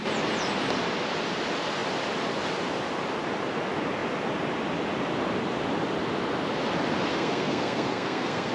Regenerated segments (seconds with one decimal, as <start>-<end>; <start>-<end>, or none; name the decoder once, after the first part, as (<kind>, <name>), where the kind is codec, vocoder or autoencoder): 7.1-8.5 (codec, SNAC)